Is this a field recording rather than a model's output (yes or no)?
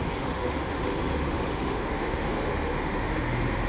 no